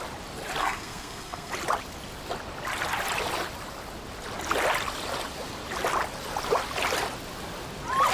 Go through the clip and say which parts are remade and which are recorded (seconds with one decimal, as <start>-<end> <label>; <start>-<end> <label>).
0.0-0.6 recorded; 0.6-1.5 remade; 1.5-8.1 recorded